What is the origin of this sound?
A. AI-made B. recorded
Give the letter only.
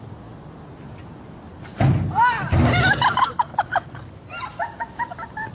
B